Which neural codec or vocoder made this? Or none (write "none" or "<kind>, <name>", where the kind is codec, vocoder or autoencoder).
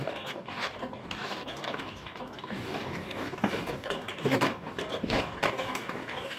codec, DAC